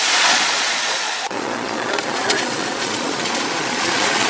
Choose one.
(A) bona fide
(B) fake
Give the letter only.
B